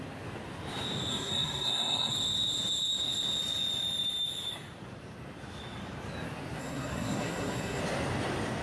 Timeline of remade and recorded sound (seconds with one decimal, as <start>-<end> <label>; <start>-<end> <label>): 0.0-1.1 recorded; 1.1-2.1 remade; 2.1-6.6 recorded; 6.6-7.8 remade; 7.8-8.6 recorded